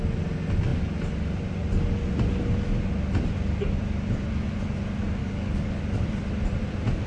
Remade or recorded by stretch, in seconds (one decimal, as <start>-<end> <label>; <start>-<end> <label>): 0.0-5.2 recorded; 5.2-5.8 remade; 5.8-7.1 recorded